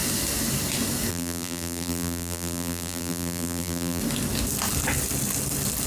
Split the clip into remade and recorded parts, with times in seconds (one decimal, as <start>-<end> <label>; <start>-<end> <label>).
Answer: 0.0-1.1 recorded; 1.1-4.0 remade; 4.0-5.9 recorded